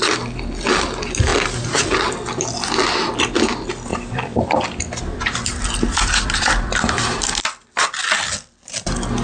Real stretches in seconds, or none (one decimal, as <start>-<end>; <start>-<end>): 0.0-3.9; 7.8-9.2